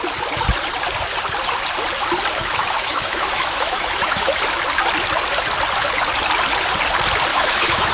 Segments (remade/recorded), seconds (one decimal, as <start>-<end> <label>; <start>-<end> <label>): 0.0-2.4 recorded; 2.4-4.3 remade; 4.3-7.3 recorded; 7.3-7.9 remade